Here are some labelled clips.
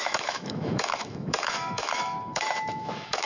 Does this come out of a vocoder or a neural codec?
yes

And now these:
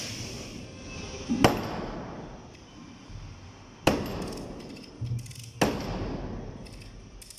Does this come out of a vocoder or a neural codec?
no